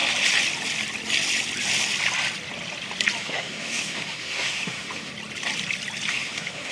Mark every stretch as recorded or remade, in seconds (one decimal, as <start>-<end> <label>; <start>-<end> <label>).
0.0-3.2 recorded; 3.2-5.1 remade; 5.1-6.1 recorded; 6.1-6.7 remade